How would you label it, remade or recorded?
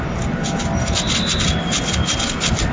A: recorded